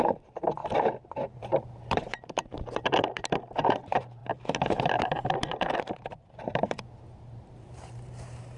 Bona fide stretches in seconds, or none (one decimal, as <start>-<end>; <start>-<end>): 0.6-1.4; 4.2-4.8